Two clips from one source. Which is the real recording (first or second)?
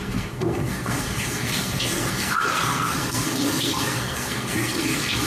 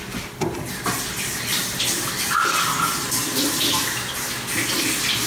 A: second